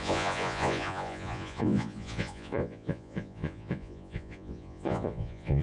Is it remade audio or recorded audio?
remade